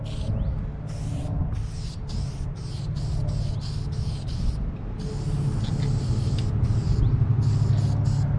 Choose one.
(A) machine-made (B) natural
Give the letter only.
B